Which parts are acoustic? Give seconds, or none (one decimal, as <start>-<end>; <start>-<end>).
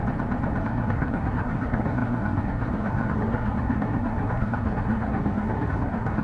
0.0-0.6